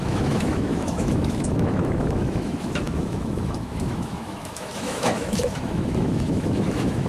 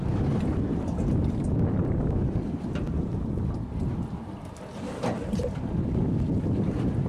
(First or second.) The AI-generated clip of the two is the first